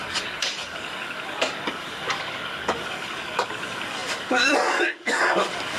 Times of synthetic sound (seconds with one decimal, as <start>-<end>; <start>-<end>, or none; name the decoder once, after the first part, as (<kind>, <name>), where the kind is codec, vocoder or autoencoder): 0.0-5.8 (codec, DAC)